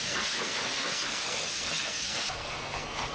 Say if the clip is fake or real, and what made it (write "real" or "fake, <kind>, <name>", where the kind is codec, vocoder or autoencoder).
fake, codec, SNAC